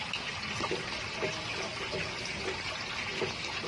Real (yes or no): yes